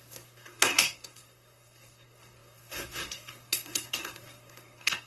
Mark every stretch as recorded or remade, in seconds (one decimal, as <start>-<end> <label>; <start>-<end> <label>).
0.0-5.1 remade